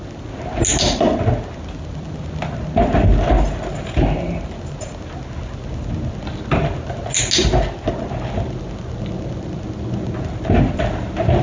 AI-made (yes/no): no